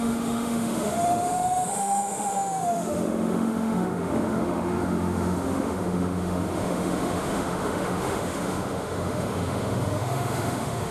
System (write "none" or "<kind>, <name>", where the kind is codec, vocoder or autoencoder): autoencoder, DAC-VAE